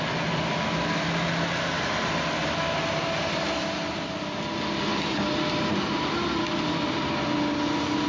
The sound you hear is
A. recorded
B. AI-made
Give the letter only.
A